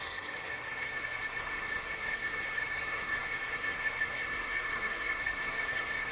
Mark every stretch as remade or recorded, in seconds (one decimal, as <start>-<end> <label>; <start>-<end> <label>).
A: 0.0-6.1 remade